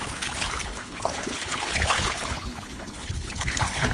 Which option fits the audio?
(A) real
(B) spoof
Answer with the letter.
B